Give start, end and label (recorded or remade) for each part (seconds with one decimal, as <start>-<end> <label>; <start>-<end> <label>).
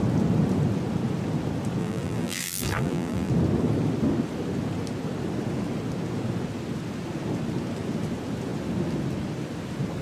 0.0-1.8 recorded; 1.8-3.3 remade; 3.3-10.0 recorded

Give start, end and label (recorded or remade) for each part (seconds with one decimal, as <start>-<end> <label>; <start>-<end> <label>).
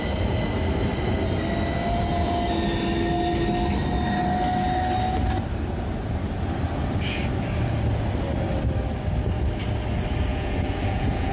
0.0-10.3 recorded; 10.3-11.3 remade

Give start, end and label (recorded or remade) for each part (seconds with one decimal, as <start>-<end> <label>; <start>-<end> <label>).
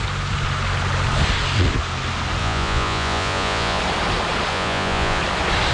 0.0-2.4 recorded; 2.4-3.8 remade; 3.8-4.5 recorded; 4.5-5.2 remade; 5.2-5.7 recorded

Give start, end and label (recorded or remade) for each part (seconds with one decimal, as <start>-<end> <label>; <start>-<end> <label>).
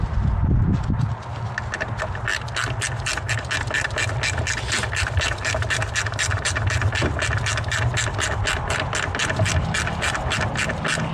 0.0-11.1 recorded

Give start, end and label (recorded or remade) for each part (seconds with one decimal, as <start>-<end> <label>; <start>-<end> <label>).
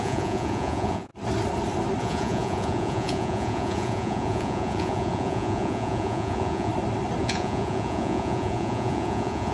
0.0-1.1 remade; 1.1-2.0 recorded; 2.0-6.7 remade; 6.7-7.2 recorded; 7.2-9.5 remade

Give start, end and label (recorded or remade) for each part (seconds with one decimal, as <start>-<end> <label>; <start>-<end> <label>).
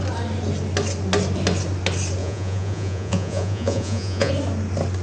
0.0-2.2 recorded; 2.2-4.3 remade; 4.3-5.0 recorded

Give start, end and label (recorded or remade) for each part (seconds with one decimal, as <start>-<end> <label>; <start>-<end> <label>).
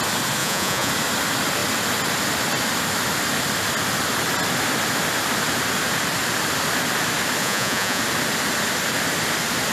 0.0-0.4 recorded; 0.4-0.9 remade; 0.9-7.4 recorded; 7.4-8.0 remade; 8.0-9.7 recorded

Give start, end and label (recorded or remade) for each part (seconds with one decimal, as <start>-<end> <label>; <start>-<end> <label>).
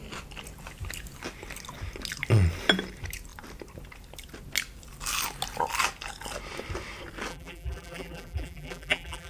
0.0-7.3 recorded; 7.3-9.3 remade